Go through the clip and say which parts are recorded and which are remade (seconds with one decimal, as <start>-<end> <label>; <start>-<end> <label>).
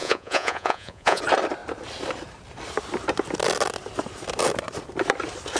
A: 0.0-1.2 remade; 1.2-5.6 recorded